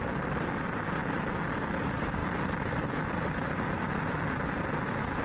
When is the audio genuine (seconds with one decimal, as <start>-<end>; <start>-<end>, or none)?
0.0-1.0; 1.7-2.2; 4.7-5.2